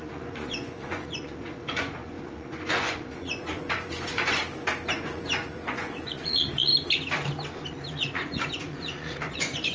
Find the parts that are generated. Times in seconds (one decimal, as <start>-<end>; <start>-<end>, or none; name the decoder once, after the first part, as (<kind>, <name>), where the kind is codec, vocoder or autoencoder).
0.0-4.4 (vocoder, Vocos); 4.9-6.7; 7.7-9.7